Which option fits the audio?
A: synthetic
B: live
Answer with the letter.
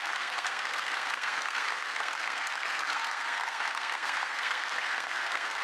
A